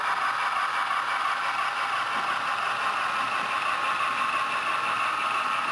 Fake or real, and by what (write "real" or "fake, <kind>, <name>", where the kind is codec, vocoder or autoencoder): real